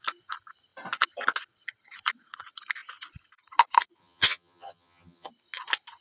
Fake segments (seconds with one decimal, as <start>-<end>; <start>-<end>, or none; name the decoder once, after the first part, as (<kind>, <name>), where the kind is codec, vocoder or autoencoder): 4.0-5.3 (vocoder, HiFi-GAN)